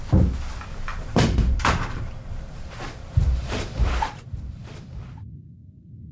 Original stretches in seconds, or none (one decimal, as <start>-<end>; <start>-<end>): 0.0-0.9; 4.6-6.1